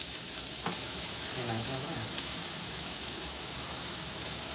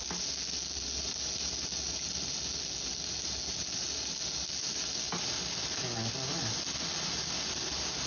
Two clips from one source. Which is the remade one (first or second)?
first